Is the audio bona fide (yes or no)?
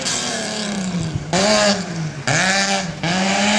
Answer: no